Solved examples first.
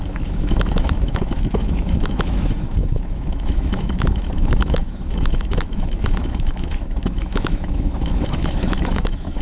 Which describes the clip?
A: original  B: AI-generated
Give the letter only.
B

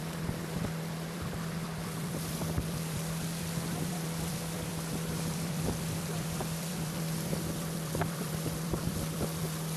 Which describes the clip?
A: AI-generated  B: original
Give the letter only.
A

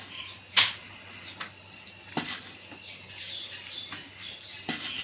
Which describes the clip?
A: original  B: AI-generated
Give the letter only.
A